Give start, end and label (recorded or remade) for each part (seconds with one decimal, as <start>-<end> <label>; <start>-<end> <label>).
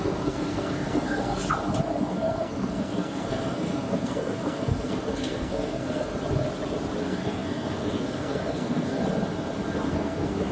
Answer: 0.0-1.4 remade; 1.4-2.1 recorded; 2.1-6.1 remade; 6.1-7.0 recorded; 7.0-9.0 remade; 9.0-9.9 recorded; 9.9-10.5 remade